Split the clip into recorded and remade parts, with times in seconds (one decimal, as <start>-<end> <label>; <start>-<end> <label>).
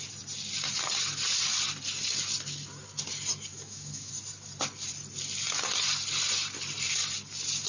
0.0-3.5 recorded; 3.5-4.1 remade; 4.1-7.7 recorded